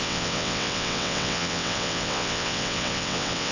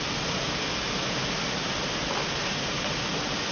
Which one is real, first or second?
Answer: second